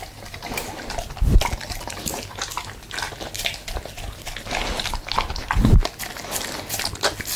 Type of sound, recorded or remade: recorded